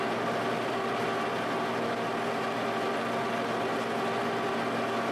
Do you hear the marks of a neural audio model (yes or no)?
no